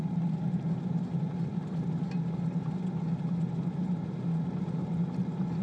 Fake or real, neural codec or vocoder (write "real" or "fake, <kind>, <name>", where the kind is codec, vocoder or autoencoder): real